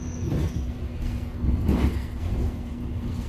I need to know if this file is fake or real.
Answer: fake